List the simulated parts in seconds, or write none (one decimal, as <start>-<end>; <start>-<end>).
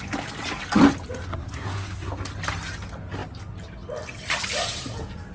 1.3-2.1